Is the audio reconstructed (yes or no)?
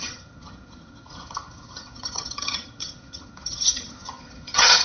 yes